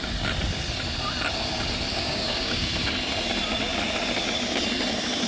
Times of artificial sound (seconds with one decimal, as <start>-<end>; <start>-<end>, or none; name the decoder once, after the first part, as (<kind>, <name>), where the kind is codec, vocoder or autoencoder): 1.9-2.7 (codec, DAC)